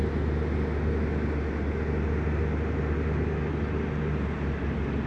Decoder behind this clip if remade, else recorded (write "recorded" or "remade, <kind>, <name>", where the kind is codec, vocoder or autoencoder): recorded